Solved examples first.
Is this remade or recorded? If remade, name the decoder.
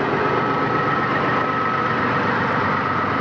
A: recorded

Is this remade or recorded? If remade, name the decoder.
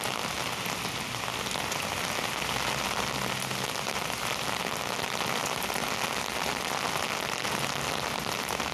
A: recorded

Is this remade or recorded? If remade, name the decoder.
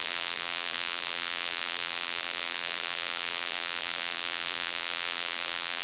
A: remade, vocoder, BigVGAN v2